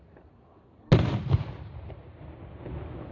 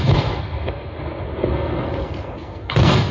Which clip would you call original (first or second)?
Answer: first